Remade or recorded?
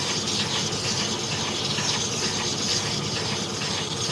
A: recorded